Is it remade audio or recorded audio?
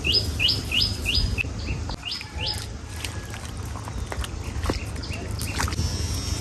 recorded